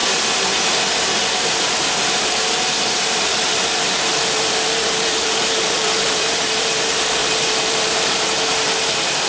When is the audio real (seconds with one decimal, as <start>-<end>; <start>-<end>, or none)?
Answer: 0.0-2.0